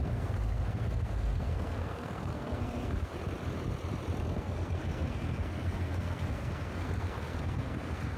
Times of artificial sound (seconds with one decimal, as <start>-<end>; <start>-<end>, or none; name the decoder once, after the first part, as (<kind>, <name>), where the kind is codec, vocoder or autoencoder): 0.0-3.1 (codec, SNAC); 4.2-8.2